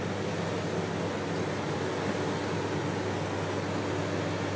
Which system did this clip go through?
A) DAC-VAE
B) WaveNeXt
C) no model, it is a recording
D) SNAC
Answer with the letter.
C